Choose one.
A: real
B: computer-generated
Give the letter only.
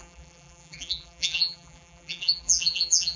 B